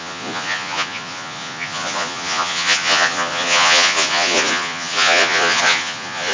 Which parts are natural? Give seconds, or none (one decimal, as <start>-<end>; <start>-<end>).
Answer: none

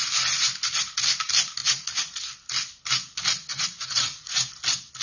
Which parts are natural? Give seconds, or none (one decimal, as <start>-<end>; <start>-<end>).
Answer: 0.0-1.6; 2.3-3.5; 4.5-5.0

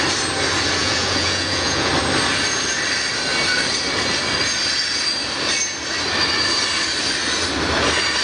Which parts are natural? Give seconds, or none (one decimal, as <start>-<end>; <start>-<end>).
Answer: 0.0-0.8; 1.9-8.2

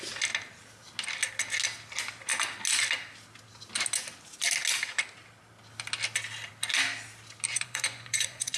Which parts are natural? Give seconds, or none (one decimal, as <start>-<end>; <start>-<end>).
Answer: 0.0-7.5

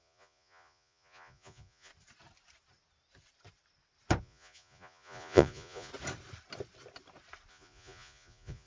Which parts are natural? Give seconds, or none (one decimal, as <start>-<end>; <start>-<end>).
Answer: 1.9-4.2; 5.9-7.5